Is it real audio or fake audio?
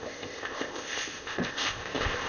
fake